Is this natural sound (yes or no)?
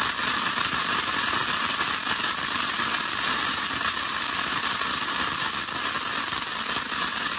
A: yes